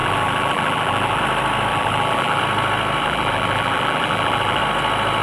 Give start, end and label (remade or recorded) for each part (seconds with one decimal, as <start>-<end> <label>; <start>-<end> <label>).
0.0-1.2 remade; 1.2-1.7 recorded; 1.7-2.4 remade; 2.4-3.0 recorded; 3.0-4.6 remade; 4.6-5.2 recorded